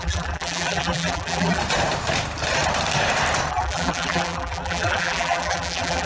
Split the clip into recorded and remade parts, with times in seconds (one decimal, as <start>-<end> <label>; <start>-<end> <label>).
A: 0.0-1.6 remade; 1.6-3.5 recorded; 3.5-6.1 remade

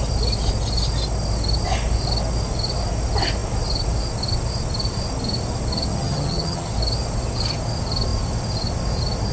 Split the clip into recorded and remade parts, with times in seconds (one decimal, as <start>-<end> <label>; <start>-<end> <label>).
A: 0.0-5.9 recorded; 5.9-6.7 remade; 6.7-9.3 recorded

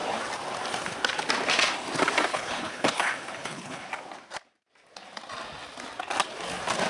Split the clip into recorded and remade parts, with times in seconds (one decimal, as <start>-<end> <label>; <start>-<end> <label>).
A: 0.0-2.3 recorded; 2.3-3.9 remade; 3.9-6.9 recorded

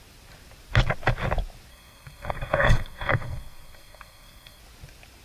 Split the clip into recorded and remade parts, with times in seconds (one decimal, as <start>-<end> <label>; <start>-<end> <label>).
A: 0.0-1.7 recorded; 1.7-4.6 remade; 4.6-5.2 recorded

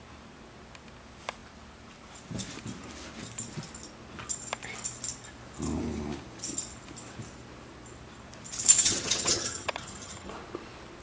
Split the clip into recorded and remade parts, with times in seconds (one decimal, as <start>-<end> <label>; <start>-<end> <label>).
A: 0.0-8.8 recorded; 8.8-10.3 remade; 10.3-11.0 recorded